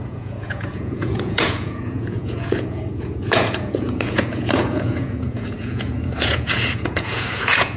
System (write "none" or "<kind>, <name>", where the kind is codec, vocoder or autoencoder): vocoder, Vocos